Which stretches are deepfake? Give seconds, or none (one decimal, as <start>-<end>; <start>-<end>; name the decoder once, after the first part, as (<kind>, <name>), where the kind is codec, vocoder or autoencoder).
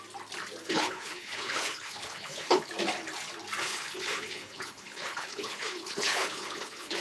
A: 0.6-2.6 (codec, HILCodec); 3.6-7.0